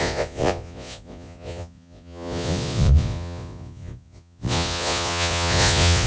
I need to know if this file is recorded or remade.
remade